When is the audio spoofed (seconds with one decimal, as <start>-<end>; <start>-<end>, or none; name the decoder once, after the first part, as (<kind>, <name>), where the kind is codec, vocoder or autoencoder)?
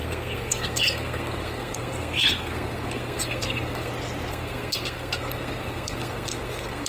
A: 0.0-3.9 (codec, SNAC); 4.3-6.9